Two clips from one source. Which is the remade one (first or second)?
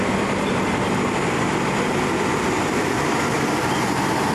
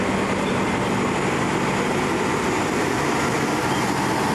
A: first